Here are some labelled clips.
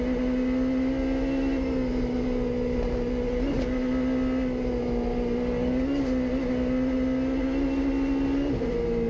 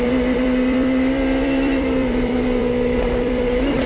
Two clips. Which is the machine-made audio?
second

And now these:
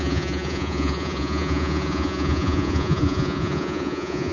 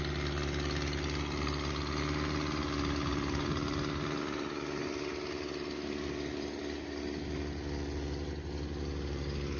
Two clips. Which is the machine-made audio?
first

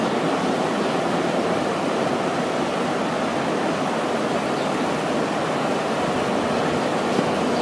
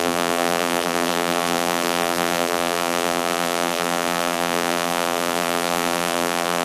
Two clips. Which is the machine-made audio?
second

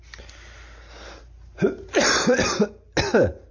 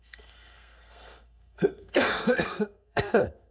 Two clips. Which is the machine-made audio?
second